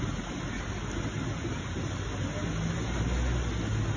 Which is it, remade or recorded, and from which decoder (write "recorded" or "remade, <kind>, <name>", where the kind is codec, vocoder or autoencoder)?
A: recorded